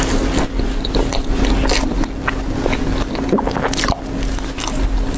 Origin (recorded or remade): recorded